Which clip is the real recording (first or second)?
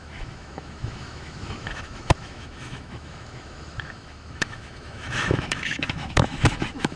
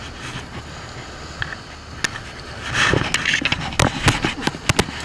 second